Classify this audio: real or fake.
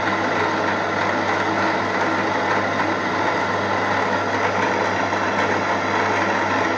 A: real